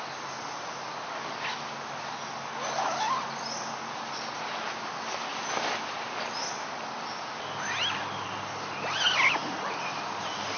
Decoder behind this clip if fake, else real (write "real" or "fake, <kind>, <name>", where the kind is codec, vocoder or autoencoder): real